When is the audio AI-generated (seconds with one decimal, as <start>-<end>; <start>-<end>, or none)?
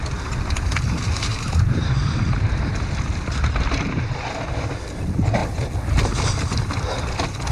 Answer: 1.3-2.7